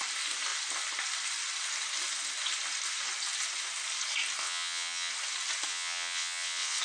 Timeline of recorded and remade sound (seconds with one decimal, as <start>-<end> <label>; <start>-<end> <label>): 0.0-4.4 recorded; 4.4-5.1 remade; 5.1-5.7 recorded; 5.7-6.8 remade